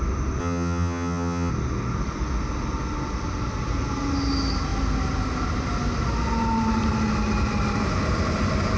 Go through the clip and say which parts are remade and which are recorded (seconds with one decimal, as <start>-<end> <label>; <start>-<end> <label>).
0.0-0.4 recorded; 0.4-1.5 remade; 1.5-8.8 recorded